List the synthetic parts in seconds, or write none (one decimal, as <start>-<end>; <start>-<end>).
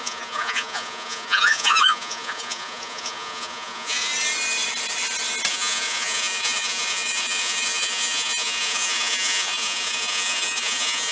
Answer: 0.0-4.1; 5.5-11.1